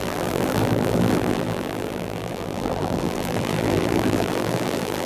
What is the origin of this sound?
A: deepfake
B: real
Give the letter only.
A